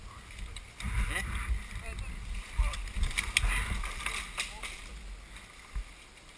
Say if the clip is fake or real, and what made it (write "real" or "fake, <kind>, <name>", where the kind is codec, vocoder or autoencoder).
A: real